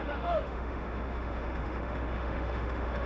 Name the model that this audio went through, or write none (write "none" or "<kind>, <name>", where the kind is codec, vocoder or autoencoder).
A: autoencoder, DAC-VAE